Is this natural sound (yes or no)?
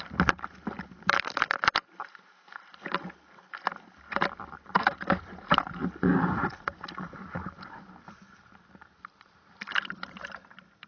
yes